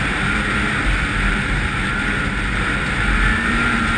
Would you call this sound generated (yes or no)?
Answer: yes